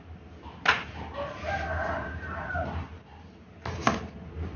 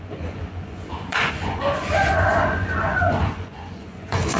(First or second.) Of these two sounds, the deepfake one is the second